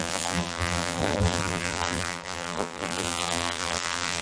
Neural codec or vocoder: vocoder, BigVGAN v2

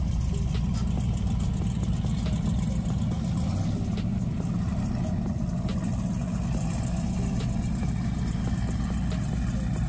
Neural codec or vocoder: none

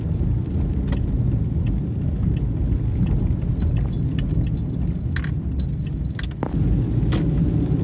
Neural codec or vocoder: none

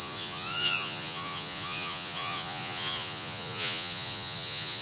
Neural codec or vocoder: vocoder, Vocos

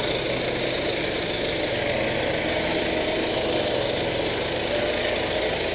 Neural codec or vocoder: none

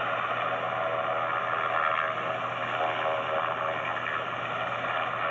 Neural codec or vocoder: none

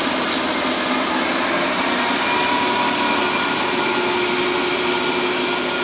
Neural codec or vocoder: none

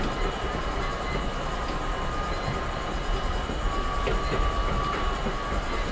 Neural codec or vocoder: none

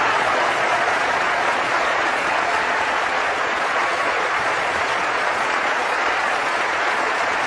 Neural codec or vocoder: vocoder, Vocos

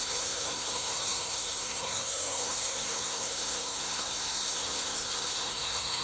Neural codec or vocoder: codec, SNAC